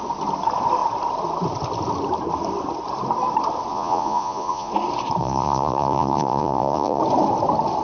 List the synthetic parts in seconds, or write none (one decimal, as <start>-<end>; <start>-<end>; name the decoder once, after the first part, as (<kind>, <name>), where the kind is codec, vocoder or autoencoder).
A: 3.7-4.7 (vocoder, Vocos); 5.2-7.0

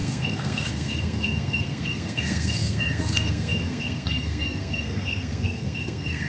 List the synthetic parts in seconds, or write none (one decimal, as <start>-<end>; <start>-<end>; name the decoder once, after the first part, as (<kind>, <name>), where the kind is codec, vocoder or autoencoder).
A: 0.0-6.3 (codec, SNAC)

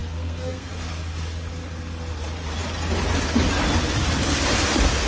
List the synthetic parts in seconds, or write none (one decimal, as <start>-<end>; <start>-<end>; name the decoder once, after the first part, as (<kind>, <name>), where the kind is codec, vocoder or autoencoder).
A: 0.0-0.7 (codec, SNAC)

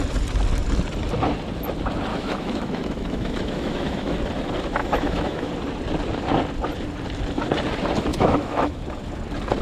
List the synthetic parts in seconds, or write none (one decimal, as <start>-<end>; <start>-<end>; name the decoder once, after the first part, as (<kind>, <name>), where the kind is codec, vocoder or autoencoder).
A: 2.1-4.2 (autoencoder, DAC-VAE); 4.8-5.5; 8.1-8.8

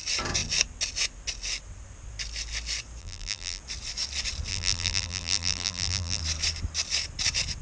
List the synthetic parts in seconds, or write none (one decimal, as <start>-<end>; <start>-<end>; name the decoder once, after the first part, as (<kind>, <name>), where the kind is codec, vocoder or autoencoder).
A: 3.0-3.6 (vocoder, BigVGAN v2); 4.5-6.2

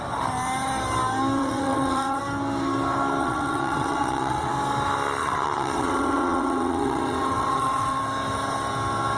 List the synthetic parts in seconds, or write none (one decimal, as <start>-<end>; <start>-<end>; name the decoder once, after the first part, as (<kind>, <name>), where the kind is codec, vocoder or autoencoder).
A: 1.4-2.2 (vocoder, WaveNeXt); 3.2-4.5; 5.2-8.0

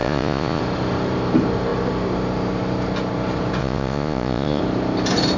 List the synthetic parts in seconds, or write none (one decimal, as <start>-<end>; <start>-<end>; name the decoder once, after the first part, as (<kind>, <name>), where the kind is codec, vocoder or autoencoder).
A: 0.0-0.6 (vocoder, Vocos); 3.6-4.6

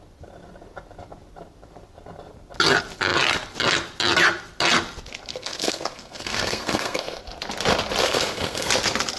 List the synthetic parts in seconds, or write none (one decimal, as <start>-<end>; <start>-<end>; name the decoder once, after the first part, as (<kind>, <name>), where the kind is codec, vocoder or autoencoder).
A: 5.3-7.2 (codec, SNAC); 8.0-8.7